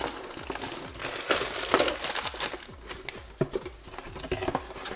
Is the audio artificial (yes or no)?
no